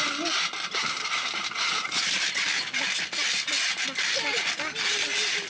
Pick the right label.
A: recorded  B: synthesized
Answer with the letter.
A